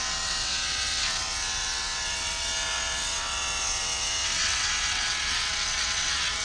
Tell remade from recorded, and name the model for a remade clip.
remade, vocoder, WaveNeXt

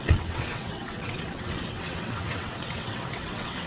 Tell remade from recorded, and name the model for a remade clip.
remade, vocoder, WaveNeXt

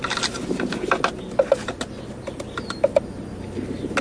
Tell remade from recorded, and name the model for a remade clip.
recorded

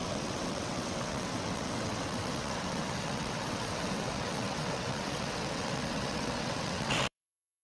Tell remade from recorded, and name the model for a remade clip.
remade, vocoder, WaveNeXt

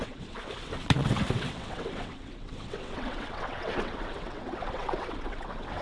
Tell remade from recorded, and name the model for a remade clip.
remade, vocoder, WaveNeXt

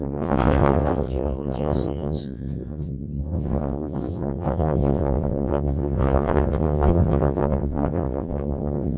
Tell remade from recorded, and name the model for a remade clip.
remade, vocoder, WaveNeXt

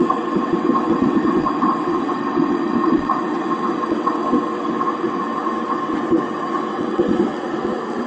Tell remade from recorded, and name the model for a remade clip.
remade, vocoder, WaveNeXt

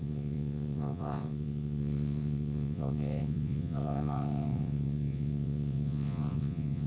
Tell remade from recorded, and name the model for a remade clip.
remade, vocoder, WaveNeXt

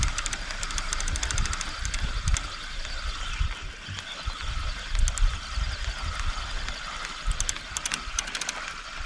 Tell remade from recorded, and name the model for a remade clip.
recorded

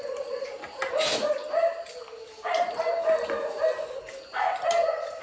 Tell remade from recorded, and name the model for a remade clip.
recorded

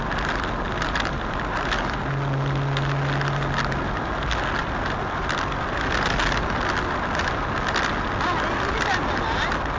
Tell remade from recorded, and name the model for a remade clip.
recorded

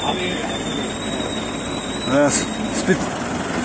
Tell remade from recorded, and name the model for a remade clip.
recorded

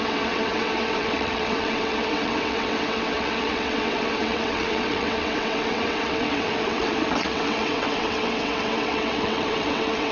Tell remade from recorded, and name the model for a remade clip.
remade, vocoder, WaveNeXt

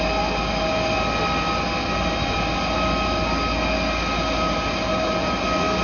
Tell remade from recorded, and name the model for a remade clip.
recorded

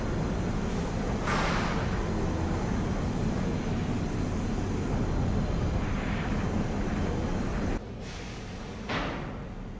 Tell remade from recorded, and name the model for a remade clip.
recorded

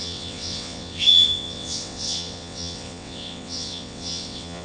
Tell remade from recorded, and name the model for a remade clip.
remade, vocoder, WaveNeXt